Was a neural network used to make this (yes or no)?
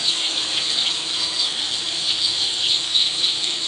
yes